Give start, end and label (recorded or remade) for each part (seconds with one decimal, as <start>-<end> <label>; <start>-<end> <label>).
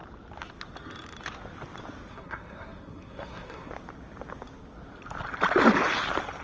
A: 0.0-2.1 recorded; 2.1-3.7 remade; 3.7-6.4 recorded